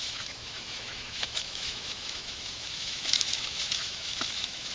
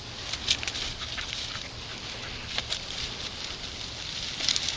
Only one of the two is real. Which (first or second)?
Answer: second